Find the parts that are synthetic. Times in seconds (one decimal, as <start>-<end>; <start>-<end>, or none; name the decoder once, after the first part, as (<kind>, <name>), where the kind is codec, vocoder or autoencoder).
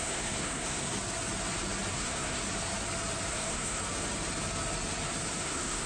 0.0-0.9 (codec, SNAC); 1.9-2.4; 3.3-3.8; 5.4-5.9